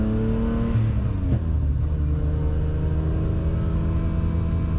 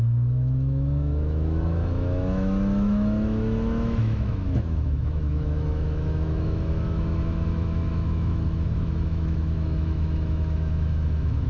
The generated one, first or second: second